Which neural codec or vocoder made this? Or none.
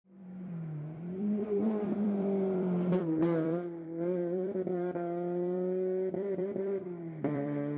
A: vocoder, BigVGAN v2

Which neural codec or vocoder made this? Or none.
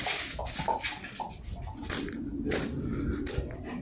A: none